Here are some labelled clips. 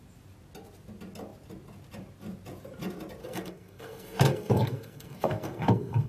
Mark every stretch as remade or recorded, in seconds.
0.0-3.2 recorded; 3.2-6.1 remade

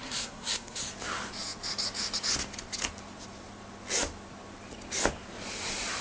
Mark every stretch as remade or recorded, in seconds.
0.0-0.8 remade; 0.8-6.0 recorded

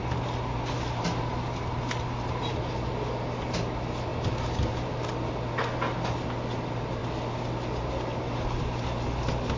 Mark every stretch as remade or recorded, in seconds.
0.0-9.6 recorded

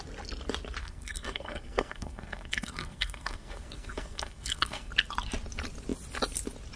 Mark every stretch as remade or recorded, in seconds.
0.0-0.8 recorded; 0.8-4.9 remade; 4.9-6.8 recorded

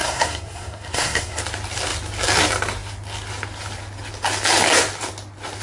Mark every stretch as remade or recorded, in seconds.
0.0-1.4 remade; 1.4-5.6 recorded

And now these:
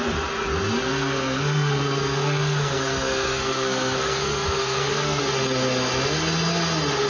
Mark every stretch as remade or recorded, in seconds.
0.0-0.9 recorded; 0.9-5.2 remade; 5.2-7.1 recorded

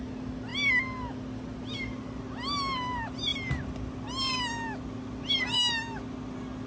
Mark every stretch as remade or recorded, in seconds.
0.0-6.7 recorded